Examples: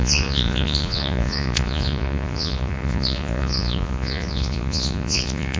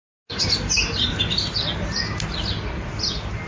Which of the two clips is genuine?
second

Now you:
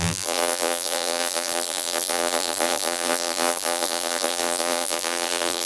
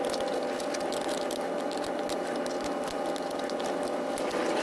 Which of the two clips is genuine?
second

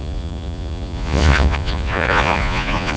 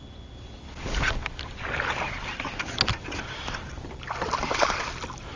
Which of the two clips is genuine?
second